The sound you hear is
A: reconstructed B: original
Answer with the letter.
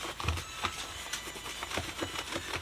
B